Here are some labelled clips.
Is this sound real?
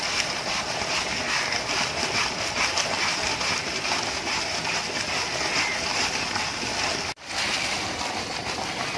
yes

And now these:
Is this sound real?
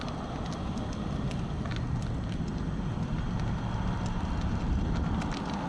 yes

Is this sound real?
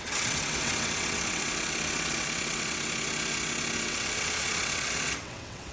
no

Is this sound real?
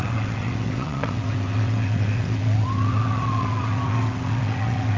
no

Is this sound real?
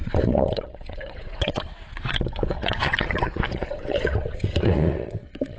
no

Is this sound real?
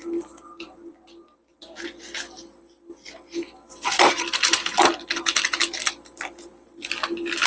yes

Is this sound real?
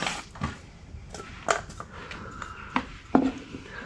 yes